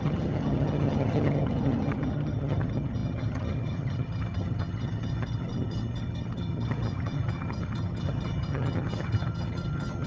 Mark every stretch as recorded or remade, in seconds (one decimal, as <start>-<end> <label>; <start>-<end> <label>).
0.0-10.1 remade